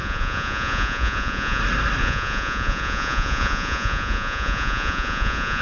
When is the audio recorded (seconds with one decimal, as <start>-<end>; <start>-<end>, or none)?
1.6-2.0